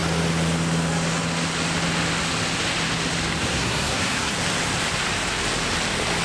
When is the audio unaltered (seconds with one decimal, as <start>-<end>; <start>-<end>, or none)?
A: 0.0-3.5; 4.3-6.2